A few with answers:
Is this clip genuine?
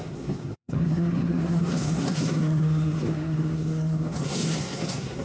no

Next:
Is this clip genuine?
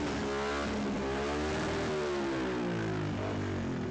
yes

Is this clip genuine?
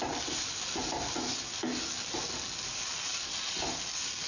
yes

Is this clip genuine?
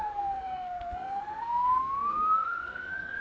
no